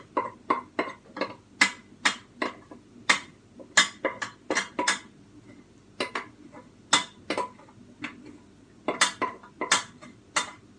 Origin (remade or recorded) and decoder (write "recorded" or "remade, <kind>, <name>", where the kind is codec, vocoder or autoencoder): recorded